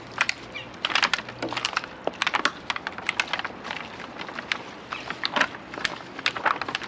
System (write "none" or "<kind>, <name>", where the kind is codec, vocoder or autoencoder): none